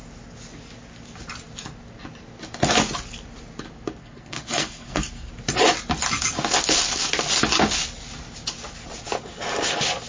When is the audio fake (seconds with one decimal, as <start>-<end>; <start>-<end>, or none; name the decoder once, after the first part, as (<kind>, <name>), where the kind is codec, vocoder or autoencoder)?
4.0-5.3 (codec, SNAC)